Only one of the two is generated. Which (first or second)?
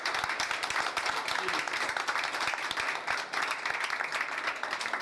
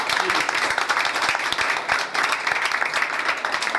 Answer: second